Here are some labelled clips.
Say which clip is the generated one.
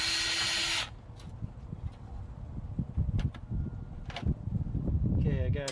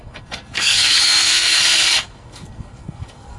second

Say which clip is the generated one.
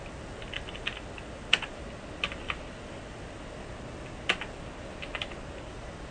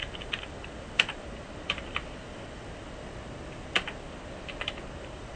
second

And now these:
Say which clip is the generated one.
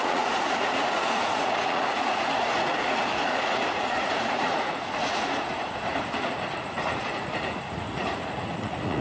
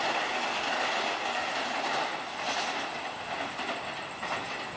first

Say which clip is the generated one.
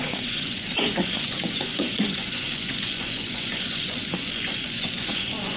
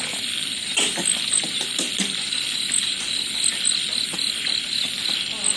first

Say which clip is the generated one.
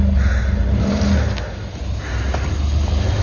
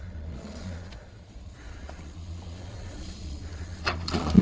second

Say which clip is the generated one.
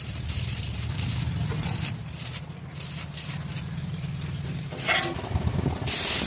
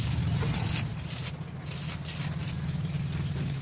first